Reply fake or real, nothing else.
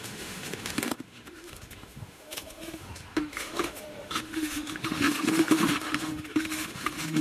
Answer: fake